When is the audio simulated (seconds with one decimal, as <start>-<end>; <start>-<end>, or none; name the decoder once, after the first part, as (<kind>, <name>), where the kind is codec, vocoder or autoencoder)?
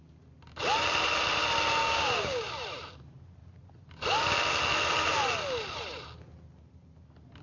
1.8-2.5 (codec, DAC)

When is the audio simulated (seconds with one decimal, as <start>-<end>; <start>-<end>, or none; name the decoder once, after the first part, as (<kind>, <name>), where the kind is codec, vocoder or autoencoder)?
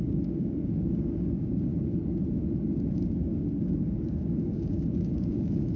0.0-1.7 (codec, DAC); 2.9-5.8